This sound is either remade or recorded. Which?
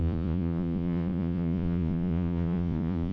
remade